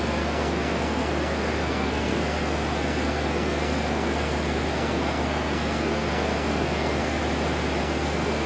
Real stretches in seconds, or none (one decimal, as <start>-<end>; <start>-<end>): 7.2-7.8